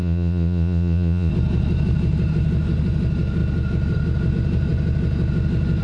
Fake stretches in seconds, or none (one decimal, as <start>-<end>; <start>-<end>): 0.0-1.3

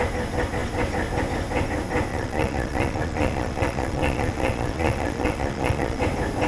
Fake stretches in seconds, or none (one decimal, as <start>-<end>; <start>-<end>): 2.1-6.0

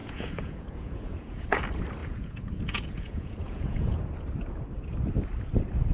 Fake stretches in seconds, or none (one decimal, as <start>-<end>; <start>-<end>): 0.0-1.6; 2.0-4.0

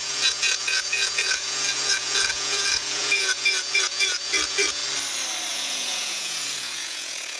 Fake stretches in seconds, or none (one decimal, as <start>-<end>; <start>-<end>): 0.0-4.8; 5.5-7.4

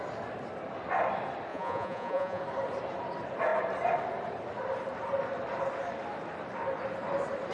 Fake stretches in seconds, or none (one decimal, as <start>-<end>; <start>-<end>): 1.5-2.4

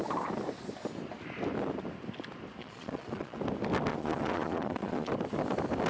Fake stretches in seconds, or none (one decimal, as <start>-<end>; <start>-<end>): 2.6-3.4; 3.9-5.1